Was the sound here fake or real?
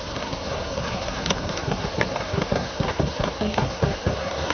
fake